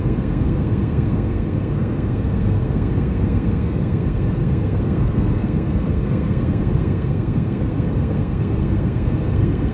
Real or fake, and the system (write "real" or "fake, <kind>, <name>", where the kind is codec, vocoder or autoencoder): fake, codec, SNAC